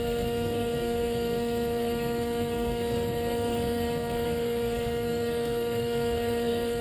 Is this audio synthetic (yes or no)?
yes